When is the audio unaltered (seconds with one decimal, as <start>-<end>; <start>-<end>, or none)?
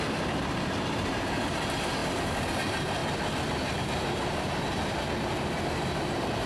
2.0-2.5; 3.0-3.8